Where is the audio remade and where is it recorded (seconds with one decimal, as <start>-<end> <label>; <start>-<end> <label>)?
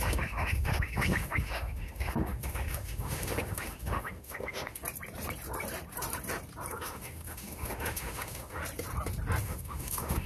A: 0.0-4.8 remade; 4.8-6.7 recorded; 6.7-8.6 remade; 8.6-9.4 recorded; 9.4-10.3 remade